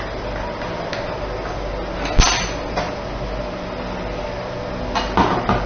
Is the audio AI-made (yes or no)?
no